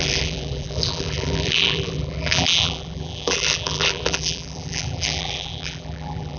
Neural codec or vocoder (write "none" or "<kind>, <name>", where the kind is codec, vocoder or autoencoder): vocoder, BigVGAN v2